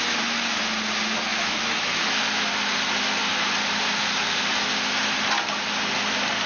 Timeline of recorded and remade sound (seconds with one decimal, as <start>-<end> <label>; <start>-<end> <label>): 0.0-1.3 recorded; 1.3-2.2 remade; 2.2-6.5 recorded